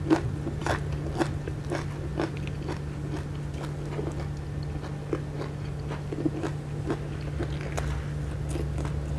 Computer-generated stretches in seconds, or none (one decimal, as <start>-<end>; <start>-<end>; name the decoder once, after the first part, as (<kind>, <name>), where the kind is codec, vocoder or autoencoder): none